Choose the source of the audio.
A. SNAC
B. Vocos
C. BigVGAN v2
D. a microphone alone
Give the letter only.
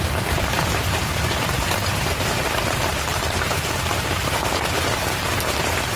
C